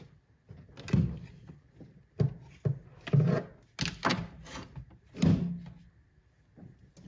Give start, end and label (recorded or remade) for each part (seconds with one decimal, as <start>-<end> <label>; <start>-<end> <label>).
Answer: 0.0-7.1 recorded